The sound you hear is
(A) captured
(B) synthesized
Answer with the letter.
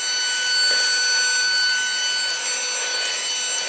A